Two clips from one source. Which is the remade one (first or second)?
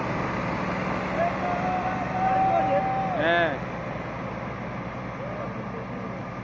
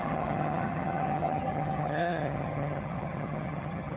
second